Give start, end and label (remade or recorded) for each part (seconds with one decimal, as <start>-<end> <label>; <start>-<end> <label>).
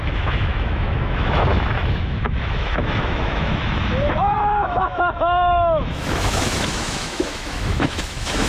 0.0-8.5 remade